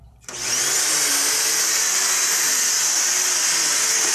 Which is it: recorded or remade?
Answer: recorded